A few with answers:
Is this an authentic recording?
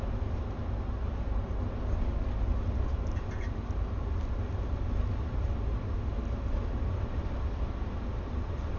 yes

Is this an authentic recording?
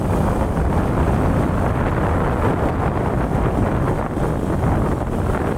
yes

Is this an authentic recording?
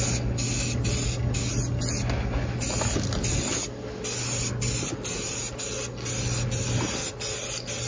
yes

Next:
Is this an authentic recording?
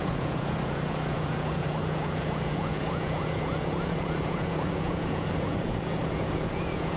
no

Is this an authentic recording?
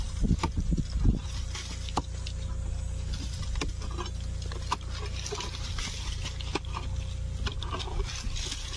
yes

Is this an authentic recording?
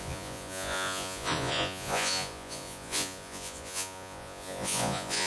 no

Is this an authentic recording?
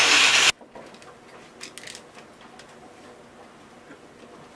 yes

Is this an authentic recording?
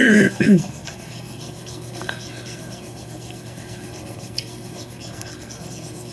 no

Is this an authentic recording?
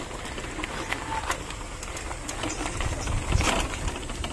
yes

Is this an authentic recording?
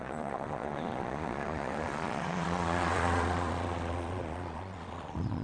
no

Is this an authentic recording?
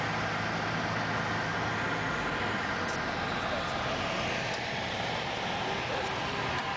yes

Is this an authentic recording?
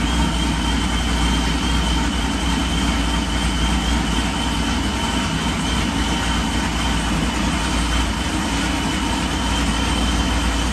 yes